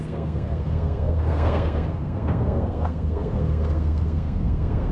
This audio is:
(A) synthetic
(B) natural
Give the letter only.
A